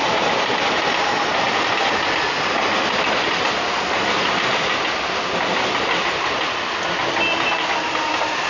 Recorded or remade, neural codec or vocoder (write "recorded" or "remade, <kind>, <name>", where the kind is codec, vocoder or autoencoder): recorded